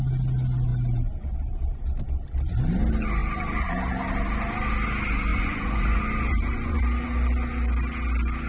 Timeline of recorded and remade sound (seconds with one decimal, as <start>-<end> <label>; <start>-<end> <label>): 0.0-5.3 recorded; 5.3-6.8 remade; 6.8-8.5 recorded

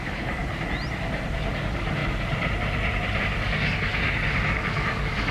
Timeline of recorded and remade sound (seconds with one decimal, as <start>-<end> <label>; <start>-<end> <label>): 0.0-0.4 remade; 0.4-1.5 recorded; 1.5-2.0 remade; 2.0-3.2 recorded; 3.2-5.3 remade

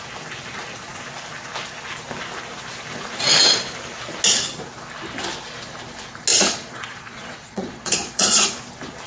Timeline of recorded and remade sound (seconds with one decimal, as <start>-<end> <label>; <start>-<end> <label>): 0.0-6.3 recorded; 6.3-8.5 remade; 8.5-9.1 recorded

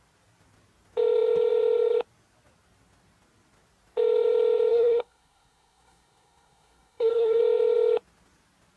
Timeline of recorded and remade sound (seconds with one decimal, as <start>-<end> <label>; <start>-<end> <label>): 0.0-4.7 recorded; 4.7-7.4 remade; 7.4-8.8 recorded

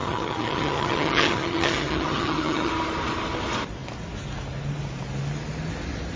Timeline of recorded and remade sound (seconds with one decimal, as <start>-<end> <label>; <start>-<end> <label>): 0.0-2.7 remade; 2.7-6.2 recorded